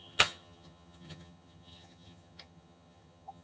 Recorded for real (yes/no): no